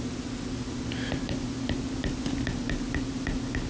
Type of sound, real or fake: real